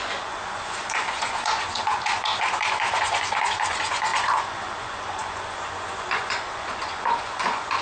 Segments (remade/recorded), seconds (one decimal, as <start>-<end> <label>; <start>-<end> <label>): 0.0-7.8 remade